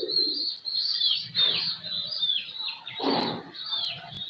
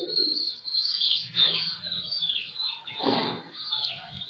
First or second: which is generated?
second